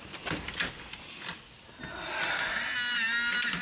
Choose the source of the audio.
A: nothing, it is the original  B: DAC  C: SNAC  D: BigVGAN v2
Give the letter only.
A